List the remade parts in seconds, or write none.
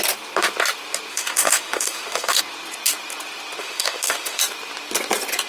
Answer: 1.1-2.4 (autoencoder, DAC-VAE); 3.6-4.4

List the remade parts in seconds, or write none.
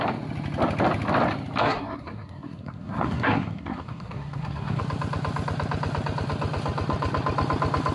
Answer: 1.6-4.8 (codec, SNAC)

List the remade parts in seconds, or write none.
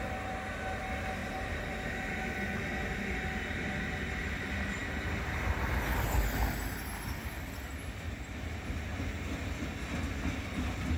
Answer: none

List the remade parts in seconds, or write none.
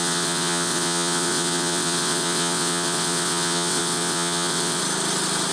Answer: 0.0-4.8 (vocoder, WaveNeXt)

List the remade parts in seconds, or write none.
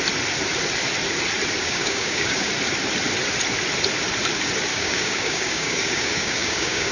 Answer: 1.6-2.5 (codec, DAC); 4.7-6.9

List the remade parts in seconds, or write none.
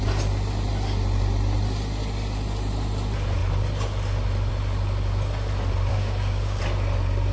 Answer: 5.9-6.6 (codec, DAC)